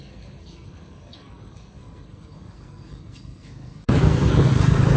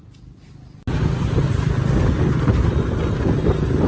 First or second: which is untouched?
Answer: second